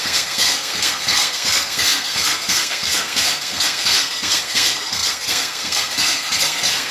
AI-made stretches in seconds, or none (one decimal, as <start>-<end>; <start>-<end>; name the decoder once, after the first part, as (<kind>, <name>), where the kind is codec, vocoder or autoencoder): 0.0-6.9 (codec, SNAC)